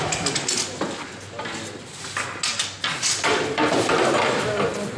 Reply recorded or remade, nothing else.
recorded